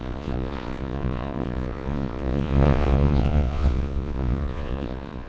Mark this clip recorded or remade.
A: remade